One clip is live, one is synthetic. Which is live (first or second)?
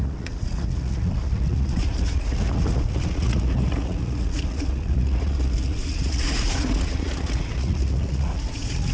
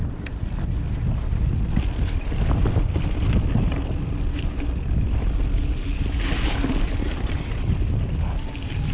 second